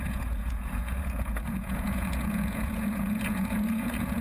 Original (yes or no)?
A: no